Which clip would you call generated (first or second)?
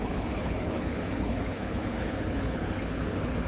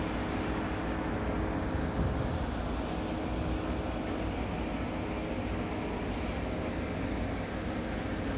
first